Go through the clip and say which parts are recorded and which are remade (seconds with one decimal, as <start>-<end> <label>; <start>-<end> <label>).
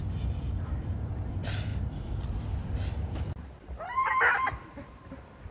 0.0-1.7 remade; 1.7-2.9 recorded; 2.9-5.5 remade